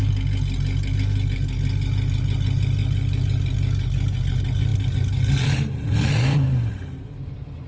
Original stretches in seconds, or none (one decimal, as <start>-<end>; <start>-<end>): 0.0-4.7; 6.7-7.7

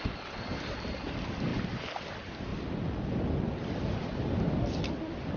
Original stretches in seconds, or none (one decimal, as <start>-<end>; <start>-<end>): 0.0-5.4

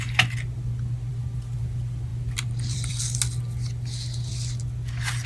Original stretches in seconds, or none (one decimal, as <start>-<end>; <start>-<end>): 0.0-2.1; 3.0-5.3